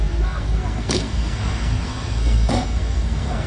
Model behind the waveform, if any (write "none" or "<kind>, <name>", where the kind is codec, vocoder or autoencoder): codec, SNAC